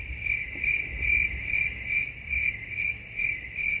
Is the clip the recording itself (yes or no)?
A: yes